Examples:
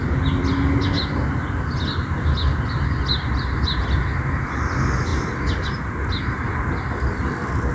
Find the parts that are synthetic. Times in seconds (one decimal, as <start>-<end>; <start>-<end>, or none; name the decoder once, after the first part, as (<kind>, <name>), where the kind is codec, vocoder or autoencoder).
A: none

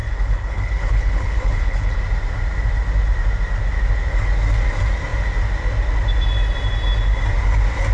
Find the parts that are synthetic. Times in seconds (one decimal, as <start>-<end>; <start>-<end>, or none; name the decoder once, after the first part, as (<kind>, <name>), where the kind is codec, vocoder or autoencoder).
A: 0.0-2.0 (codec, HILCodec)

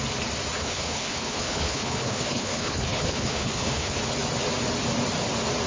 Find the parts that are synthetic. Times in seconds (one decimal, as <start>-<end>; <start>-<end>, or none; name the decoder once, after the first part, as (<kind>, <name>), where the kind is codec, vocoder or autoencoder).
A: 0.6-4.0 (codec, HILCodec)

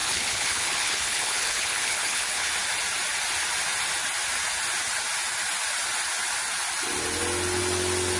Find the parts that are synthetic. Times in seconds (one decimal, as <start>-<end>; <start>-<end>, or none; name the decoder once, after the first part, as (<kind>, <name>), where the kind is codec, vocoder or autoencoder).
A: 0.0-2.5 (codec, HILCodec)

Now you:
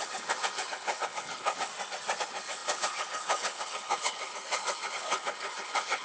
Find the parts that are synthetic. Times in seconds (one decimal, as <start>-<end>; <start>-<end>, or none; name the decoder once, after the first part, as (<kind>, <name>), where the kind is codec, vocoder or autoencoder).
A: 0.0-1.7 (codec, HILCodec); 2.2-6.0